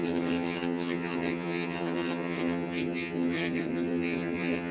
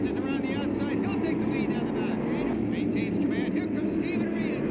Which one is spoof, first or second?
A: first